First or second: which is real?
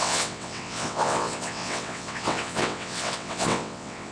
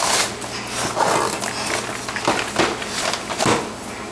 second